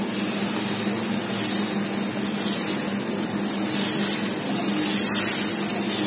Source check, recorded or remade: recorded